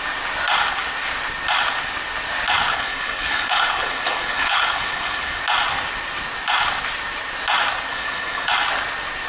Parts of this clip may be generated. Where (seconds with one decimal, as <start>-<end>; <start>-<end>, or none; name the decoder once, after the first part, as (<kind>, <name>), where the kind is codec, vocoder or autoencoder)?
2.7-5.4 (codec, HILCodec); 7.9-8.5